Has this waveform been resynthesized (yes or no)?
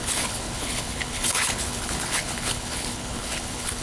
yes